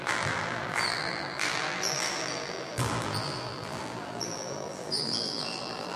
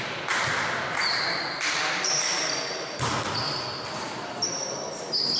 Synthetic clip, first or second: first